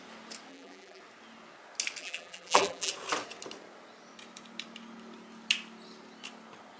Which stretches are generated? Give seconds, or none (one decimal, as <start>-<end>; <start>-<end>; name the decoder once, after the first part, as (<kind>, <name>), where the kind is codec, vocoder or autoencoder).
0.5-1.0 (vocoder, BigVGAN v2); 2.0-2.9